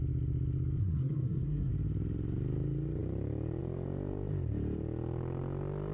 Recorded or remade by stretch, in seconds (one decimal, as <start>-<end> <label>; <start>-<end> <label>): 0.0-0.8 recorded; 0.8-1.7 remade; 1.7-5.9 recorded